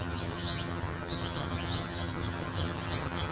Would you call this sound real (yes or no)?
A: no